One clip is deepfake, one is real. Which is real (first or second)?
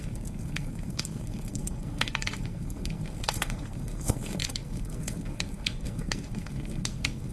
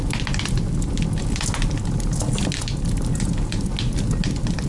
second